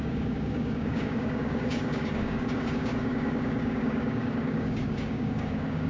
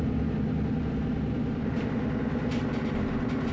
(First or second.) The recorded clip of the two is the second